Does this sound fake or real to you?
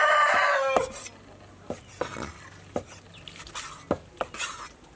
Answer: real